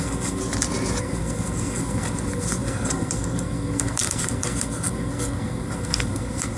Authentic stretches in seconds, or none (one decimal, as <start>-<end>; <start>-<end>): 0.4-1.0